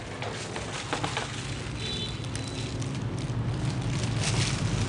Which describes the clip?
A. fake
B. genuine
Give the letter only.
B